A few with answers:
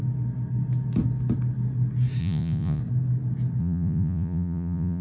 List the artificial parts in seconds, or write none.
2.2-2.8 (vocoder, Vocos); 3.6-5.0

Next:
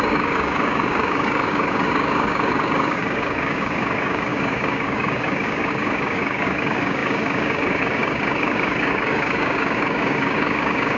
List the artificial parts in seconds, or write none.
0.0-11.0 (codec, DAC)